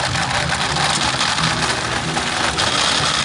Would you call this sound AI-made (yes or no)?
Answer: no